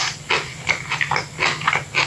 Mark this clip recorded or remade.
recorded